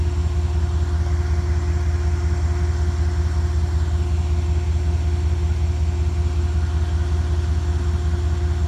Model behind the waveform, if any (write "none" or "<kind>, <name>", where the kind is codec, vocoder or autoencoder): none